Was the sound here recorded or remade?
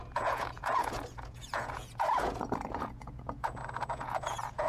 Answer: remade